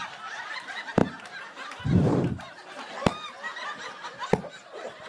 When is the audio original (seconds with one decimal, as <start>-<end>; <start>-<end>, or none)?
1.0-2.9; 3.5-4.5